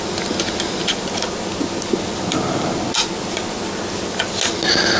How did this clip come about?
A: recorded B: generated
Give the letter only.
A